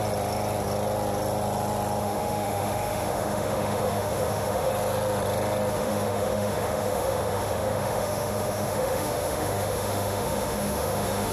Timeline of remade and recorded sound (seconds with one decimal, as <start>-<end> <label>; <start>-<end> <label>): 0.0-2.0 recorded; 2.0-4.7 remade; 4.7-5.7 recorded; 5.7-11.3 remade